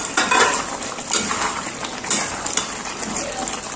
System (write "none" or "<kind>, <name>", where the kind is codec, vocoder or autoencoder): none